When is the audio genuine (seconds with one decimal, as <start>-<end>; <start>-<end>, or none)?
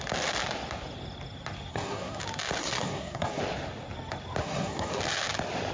0.0-1.7; 2.2-2.6; 3.4-4.4; 5.0-5.7